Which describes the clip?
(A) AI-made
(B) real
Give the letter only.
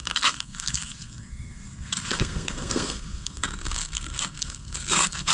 A